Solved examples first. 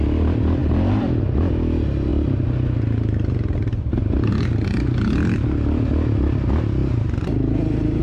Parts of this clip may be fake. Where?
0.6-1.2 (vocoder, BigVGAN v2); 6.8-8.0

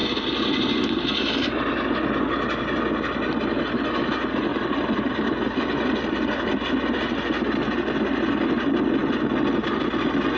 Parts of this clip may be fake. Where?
0.0-1.5 (vocoder, BigVGAN v2); 4.5-7.1